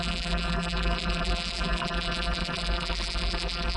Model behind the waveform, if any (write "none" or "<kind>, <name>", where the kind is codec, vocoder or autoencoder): vocoder, BigVGAN v2